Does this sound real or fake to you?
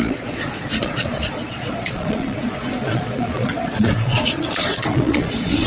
fake